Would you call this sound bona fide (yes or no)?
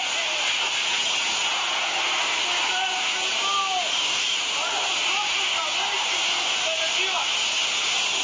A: yes